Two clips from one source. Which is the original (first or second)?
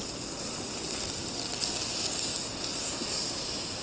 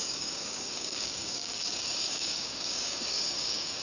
first